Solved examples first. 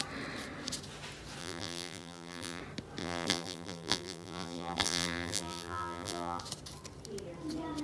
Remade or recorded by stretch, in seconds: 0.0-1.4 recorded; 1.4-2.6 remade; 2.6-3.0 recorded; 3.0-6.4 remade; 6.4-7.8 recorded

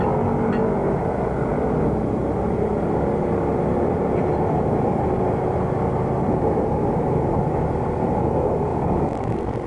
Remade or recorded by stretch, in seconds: 0.0-8.7 recorded; 8.7-9.7 remade